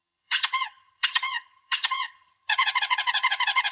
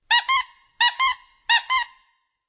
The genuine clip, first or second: second